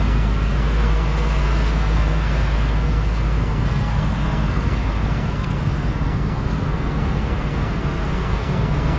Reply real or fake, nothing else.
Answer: fake